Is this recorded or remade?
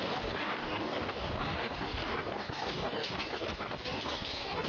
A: remade